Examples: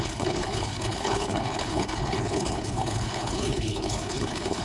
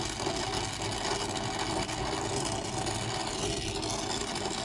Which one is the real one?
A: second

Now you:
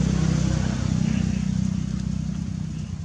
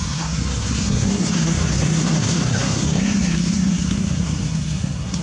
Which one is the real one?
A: first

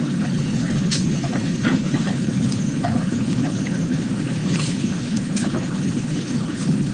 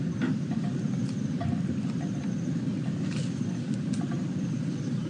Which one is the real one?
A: second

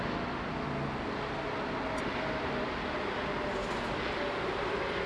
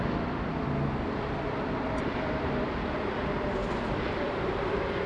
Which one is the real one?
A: first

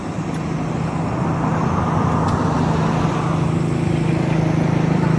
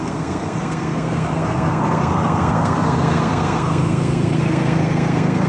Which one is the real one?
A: first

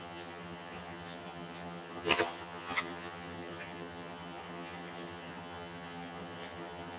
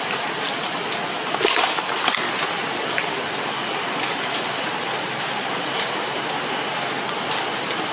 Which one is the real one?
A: second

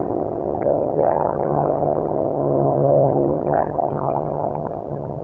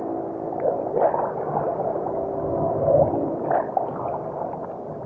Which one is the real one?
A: second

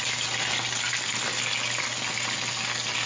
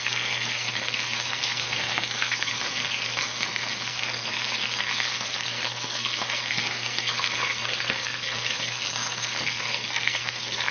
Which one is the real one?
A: first